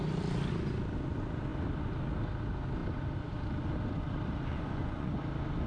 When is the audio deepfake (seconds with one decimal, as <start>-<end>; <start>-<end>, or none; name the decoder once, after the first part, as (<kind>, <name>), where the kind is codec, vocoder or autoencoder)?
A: 4.5-5.2 (vocoder, Vocos)

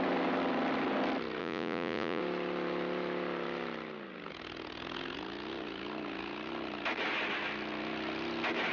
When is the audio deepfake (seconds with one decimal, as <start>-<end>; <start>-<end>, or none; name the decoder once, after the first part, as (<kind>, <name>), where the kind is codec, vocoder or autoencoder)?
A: 1.4-2.2 (vocoder, Vocos)

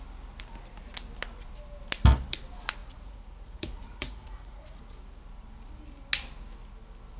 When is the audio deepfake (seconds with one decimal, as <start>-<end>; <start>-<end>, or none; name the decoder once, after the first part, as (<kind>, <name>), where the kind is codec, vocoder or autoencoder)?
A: 2.8-4.8 (vocoder, Vocos)